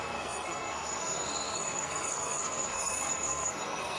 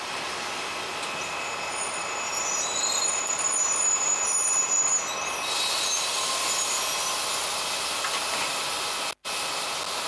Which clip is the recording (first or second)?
second